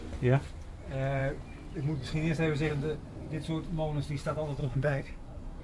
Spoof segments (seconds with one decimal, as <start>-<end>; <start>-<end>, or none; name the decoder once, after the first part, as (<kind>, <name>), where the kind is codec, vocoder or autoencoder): 4.6-5.6 (codec, SNAC)